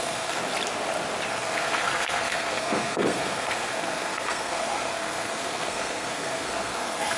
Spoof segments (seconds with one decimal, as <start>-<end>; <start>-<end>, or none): 0.0-0.4; 1.3-7.2